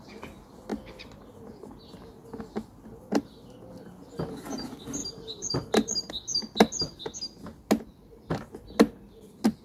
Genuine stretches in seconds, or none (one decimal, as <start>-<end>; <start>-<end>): 0.0-5.0; 6.1-9.6